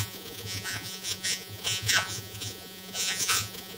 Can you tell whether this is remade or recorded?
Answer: remade